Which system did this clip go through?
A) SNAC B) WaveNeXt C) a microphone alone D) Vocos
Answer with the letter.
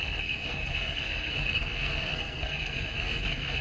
A